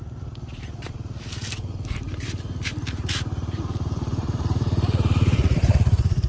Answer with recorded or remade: remade